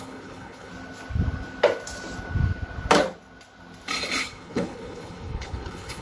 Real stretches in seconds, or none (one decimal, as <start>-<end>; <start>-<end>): 0.7-4.2